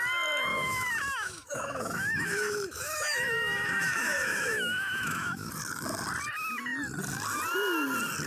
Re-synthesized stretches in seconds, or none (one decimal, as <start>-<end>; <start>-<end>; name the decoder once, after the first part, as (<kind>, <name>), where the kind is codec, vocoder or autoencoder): 0.5-5.5 (autoencoder, DAC-VAE)